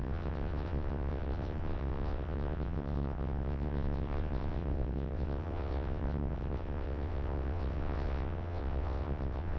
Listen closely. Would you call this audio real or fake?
fake